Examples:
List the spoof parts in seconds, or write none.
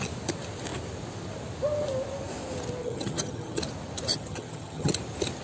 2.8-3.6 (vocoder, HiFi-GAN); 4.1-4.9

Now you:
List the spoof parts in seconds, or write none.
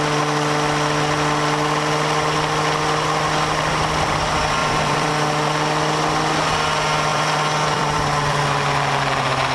4.6-5.1 (vocoder, BigVGAN v2); 7.1-8.4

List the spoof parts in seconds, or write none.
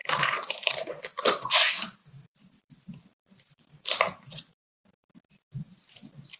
0.0-0.9 (vocoder, BigVGAN v2); 2.0-5.8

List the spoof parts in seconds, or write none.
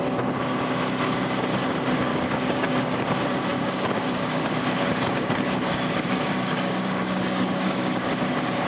2.1-3.1 (codec, DAC); 3.5-8.1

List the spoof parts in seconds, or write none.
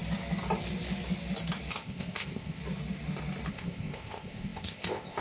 1.7-2.6 (codec, ZipCodec); 3.5-5.2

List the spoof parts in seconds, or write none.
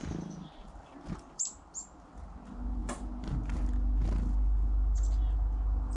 none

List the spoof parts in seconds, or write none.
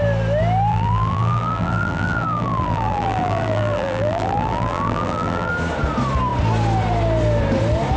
0.7-5.5 (vocoder, BigVGAN v2)